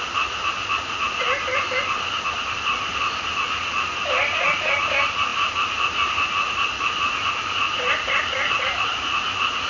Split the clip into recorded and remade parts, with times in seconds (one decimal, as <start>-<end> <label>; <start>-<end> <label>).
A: 0.0-9.7 recorded